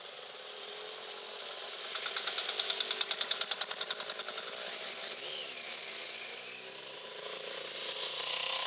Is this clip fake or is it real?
real